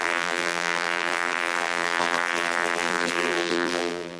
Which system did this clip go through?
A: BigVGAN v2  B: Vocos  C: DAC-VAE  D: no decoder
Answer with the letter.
A